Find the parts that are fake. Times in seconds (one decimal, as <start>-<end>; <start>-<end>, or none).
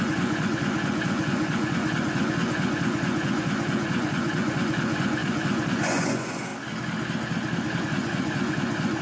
0.0-6.5; 7.8-9.0